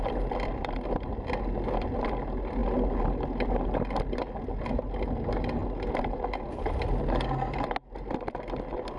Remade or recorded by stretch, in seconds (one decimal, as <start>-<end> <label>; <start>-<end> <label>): 0.0-9.0 recorded